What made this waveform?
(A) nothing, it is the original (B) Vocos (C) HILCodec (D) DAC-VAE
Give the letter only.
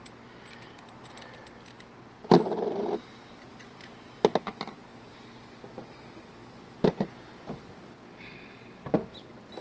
A